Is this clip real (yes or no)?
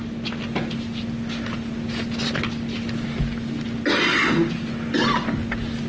yes